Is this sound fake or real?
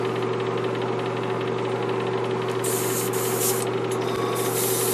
real